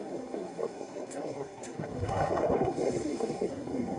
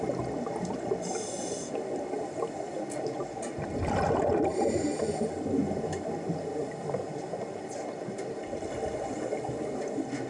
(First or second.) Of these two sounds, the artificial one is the first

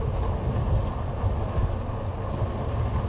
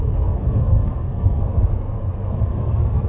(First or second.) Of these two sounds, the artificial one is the second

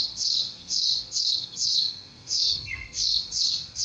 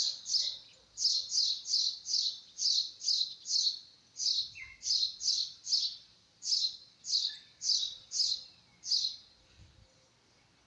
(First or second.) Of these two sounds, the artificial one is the first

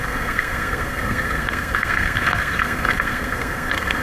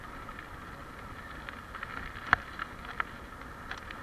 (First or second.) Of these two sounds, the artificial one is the first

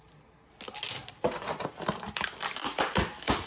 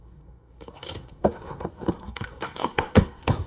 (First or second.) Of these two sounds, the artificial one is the second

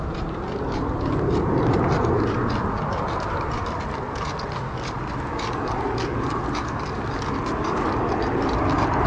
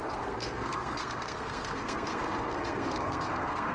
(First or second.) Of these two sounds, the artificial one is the second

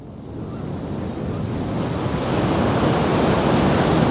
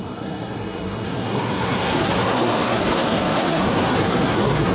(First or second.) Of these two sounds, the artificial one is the second